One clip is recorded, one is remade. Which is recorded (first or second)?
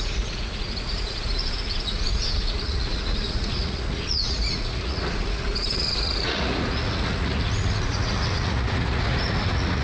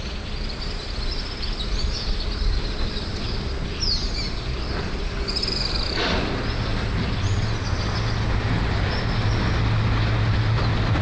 second